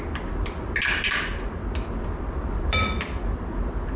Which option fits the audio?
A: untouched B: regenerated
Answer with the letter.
A